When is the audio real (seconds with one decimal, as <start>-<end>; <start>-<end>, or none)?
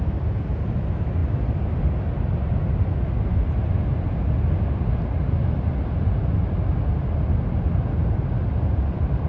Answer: 0.0-9.3